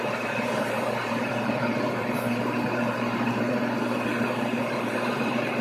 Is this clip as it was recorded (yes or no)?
no